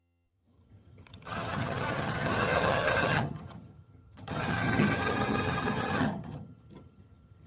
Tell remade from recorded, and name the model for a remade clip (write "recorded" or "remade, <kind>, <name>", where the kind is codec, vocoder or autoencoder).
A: remade, vocoder, HiFi-GAN